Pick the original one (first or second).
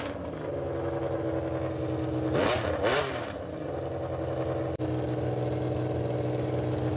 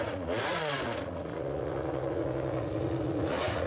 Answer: first